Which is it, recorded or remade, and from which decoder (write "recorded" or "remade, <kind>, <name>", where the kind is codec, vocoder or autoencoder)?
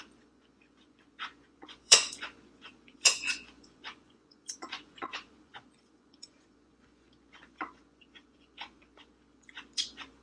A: remade, vocoder, Vocos